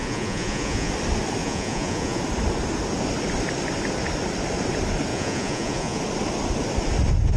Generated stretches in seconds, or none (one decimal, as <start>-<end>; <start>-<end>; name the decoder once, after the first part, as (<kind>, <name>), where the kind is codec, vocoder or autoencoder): 0.0-0.9 (vocoder, Vocos); 1.4-2.2; 5.1-6.0